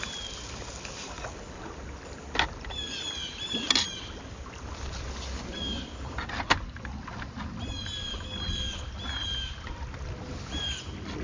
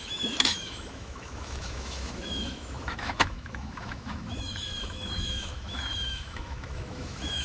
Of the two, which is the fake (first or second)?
second